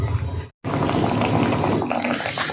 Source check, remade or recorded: recorded